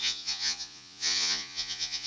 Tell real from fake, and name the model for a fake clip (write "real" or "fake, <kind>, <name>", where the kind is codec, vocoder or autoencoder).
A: fake, vocoder, Vocos